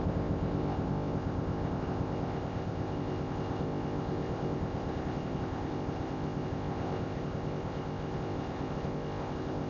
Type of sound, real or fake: fake